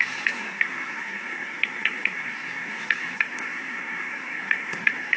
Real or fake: fake